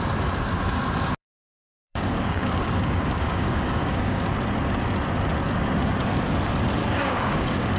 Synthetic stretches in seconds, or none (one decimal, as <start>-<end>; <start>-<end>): 1.2-4.2; 6.8-7.8